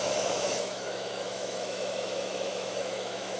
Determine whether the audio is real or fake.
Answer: fake